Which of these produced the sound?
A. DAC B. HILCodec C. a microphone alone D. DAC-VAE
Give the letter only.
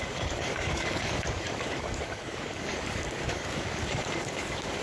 A